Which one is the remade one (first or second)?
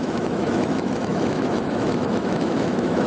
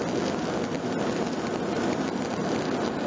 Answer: first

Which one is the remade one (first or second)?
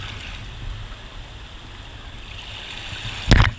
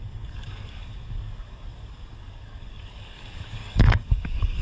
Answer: second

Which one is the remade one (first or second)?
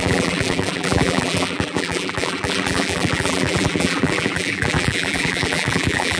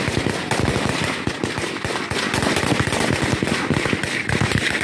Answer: first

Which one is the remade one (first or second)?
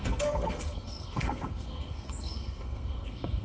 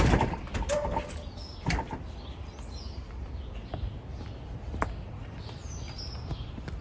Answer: first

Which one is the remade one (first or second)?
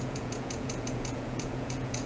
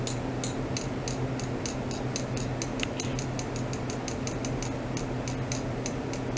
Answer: first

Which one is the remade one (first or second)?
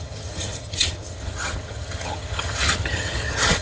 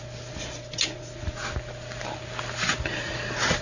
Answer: first